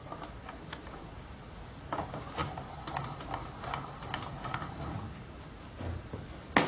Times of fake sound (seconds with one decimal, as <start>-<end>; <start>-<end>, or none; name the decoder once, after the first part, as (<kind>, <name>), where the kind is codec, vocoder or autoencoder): none